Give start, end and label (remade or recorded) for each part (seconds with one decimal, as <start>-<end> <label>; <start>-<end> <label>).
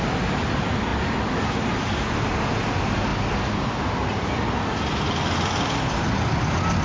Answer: 0.0-6.8 recorded